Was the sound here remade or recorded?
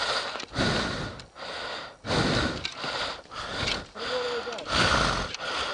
recorded